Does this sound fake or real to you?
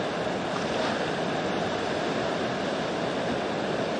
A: real